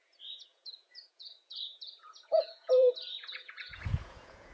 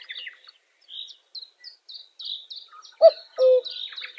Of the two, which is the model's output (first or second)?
first